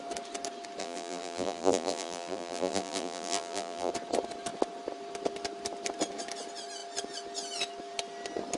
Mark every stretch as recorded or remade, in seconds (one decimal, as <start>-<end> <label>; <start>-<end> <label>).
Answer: 0.0-0.8 recorded; 0.8-3.9 remade; 3.9-8.6 recorded